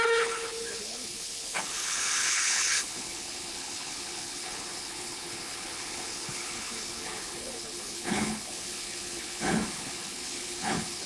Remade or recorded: remade